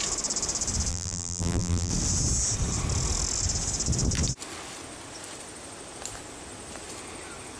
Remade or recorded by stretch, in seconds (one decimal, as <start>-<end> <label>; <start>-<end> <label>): 0.0-0.9 recorded; 0.9-1.9 remade; 1.9-7.6 recorded